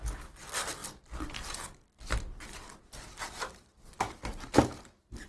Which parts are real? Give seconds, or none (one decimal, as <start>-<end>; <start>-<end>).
0.0-5.3